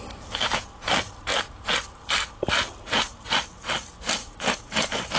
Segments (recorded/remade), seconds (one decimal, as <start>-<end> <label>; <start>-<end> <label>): 0.0-5.2 recorded